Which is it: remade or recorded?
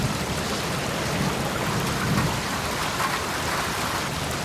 recorded